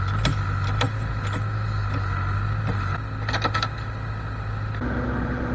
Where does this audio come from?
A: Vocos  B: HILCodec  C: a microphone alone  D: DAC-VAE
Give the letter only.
C